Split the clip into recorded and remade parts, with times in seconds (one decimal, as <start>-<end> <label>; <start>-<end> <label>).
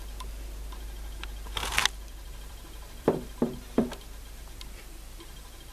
0.0-1.8 recorded; 1.8-5.2 remade; 5.2-5.7 recorded